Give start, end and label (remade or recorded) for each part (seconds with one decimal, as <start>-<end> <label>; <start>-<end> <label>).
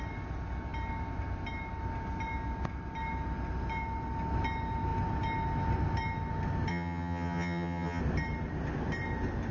0.0-6.7 recorded; 6.7-8.0 remade; 8.0-9.5 recorded